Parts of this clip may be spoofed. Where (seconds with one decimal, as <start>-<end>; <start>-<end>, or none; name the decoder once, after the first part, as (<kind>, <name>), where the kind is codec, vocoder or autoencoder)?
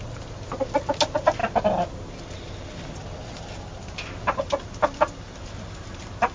none